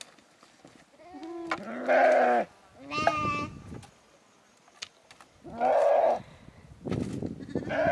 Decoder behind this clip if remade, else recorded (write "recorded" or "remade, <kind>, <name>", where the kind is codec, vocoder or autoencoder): recorded